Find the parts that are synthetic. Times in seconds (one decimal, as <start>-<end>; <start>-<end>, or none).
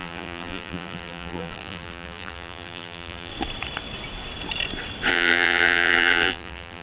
0.0-3.3; 5.1-6.8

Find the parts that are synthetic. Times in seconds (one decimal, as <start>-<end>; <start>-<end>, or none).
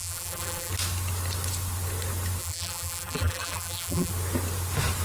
0.0-0.7; 2.4-4.1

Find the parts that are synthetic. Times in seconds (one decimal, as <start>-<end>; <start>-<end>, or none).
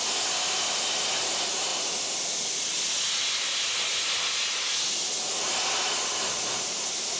none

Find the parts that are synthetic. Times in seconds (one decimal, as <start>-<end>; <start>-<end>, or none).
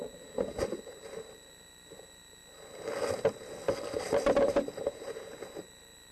0.0-2.4; 3.2-6.1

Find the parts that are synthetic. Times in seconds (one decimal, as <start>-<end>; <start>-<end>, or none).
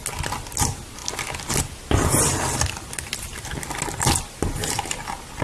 none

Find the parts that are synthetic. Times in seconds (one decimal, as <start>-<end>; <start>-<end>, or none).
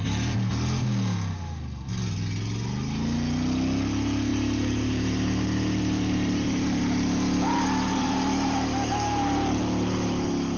4.3-9.6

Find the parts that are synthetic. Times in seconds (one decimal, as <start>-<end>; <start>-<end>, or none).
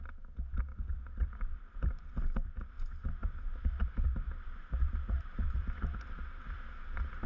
0.7-2.2; 3.2-6.8